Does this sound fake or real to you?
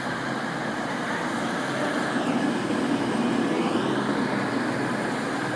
real